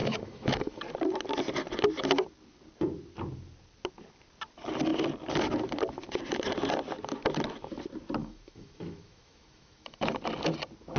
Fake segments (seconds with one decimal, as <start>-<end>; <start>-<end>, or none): 0.0-0.8; 8.2-10.2